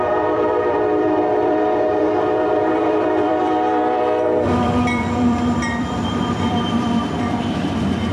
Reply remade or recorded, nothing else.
remade